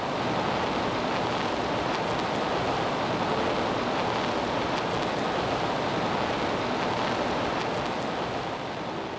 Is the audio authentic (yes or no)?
yes